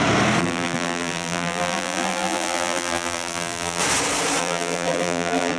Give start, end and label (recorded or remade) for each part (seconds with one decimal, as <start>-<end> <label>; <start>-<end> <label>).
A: 0.0-0.4 recorded; 0.4-3.8 remade; 3.8-4.4 recorded; 4.4-5.6 remade